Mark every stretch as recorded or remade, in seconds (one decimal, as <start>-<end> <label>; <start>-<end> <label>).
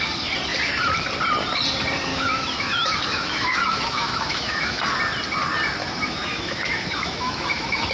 0.0-2.1 recorded; 2.1-4.8 remade; 4.8-5.8 recorded; 5.8-7.9 remade